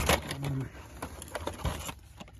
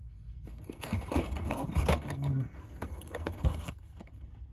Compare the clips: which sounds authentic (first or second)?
first